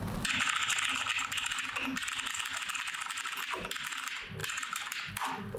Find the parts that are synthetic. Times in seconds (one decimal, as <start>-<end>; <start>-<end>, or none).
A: 1.1-1.7; 4.4-5.1